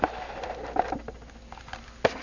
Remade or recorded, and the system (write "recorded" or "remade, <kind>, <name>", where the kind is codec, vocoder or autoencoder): recorded